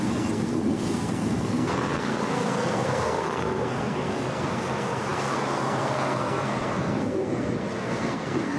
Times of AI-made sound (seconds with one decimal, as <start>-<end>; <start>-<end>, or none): 0.0-8.6